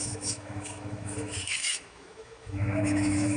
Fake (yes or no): yes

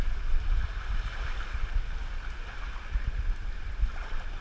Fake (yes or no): no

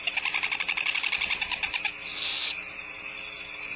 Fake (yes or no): no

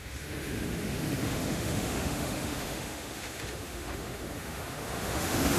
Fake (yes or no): yes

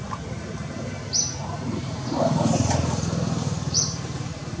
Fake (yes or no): yes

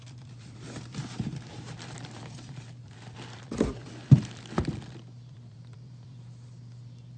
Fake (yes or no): yes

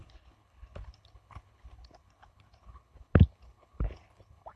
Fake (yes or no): yes